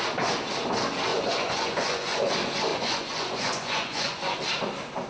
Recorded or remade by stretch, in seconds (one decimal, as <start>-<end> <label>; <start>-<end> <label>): 0.0-1.1 recorded; 1.1-2.3 remade; 2.3-2.7 recorded; 2.7-4.4 remade; 4.4-5.1 recorded